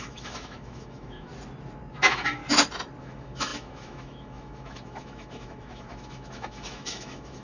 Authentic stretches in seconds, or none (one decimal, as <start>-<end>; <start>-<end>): 1.3-1.9; 2.4-3.0